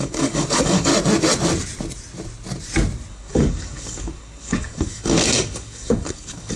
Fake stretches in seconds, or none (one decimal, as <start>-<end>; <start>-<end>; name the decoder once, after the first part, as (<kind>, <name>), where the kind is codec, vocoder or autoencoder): 0.0-0.9 (codec, DAC); 3.1-6.6